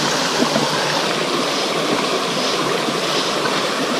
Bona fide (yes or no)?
yes